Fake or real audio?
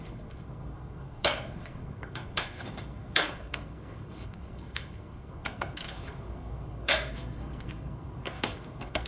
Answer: fake